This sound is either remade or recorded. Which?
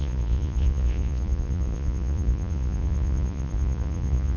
remade